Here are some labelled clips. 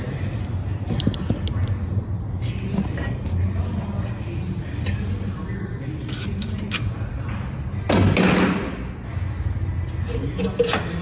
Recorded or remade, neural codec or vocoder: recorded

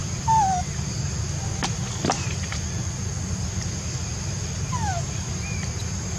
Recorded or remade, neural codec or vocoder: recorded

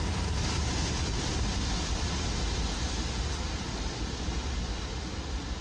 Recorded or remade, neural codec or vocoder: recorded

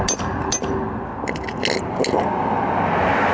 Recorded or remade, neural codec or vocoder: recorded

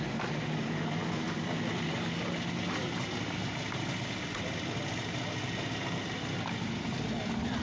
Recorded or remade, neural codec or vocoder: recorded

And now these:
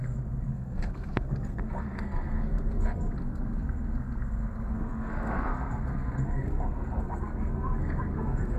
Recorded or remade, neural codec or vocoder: remade, codec, SNAC